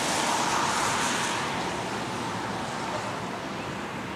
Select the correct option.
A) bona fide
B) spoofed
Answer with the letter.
A